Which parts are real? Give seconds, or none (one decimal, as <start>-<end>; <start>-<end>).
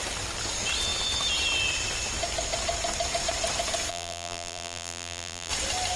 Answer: 0.0-3.9; 5.5-6.0